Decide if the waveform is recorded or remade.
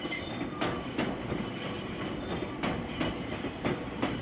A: recorded